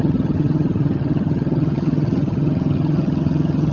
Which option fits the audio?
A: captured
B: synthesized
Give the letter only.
B